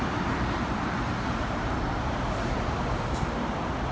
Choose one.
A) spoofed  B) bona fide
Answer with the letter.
A